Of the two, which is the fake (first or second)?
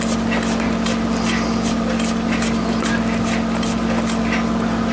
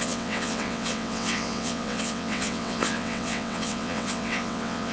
second